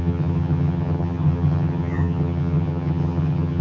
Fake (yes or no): yes